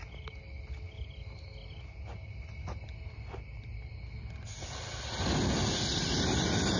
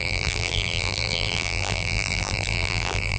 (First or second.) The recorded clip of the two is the first